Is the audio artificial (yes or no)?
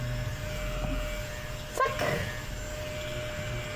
no